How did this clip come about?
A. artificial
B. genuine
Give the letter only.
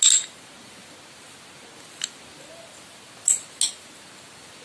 B